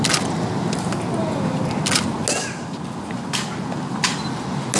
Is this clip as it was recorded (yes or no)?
yes